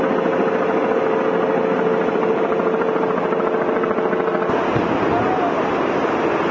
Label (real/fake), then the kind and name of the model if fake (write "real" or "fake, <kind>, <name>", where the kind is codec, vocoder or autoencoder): real